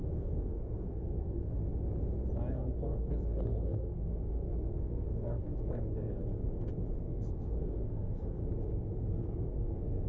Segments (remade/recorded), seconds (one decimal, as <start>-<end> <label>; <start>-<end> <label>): 0.0-1.6 remade; 1.6-2.5 recorded; 2.5-6.2 remade; 6.2-7.0 recorded; 7.0-8.4 remade; 8.4-9.1 recorded; 9.1-10.1 remade